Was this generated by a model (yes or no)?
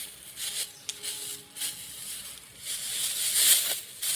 no